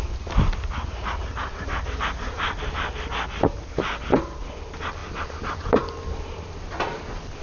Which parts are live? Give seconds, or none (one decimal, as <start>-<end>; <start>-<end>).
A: 0.0-7.4